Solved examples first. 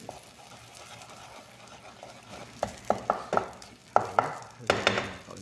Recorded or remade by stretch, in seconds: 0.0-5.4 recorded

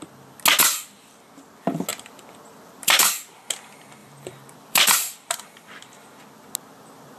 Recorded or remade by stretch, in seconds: 0.0-1.9 recorded; 1.9-3.1 remade; 3.1-4.0 recorded; 4.0-6.2 remade; 6.2-7.2 recorded

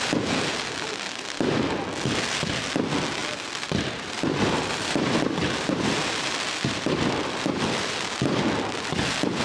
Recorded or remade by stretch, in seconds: 0.0-3.2 recorded; 3.2-7.9 remade; 7.9-9.4 recorded

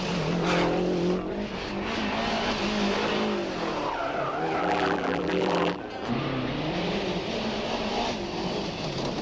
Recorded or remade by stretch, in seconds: 0.0-4.6 recorded; 4.6-5.8 remade; 5.8-9.2 recorded

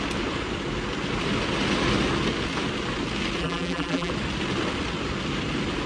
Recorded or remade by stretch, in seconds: 0.0-3.4 recorded; 3.4-4.1 remade; 4.1-5.9 recorded

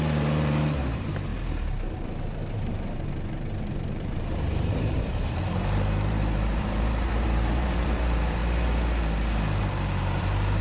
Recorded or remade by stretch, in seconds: 0.0-1.3 remade; 1.3-1.9 recorded; 1.9-8.4 remade; 8.4-9.6 recorded; 9.6-10.6 remade

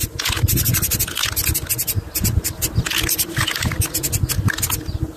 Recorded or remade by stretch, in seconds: 0.0-5.2 recorded

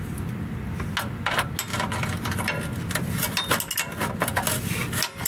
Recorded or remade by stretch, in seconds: 0.0-5.3 recorded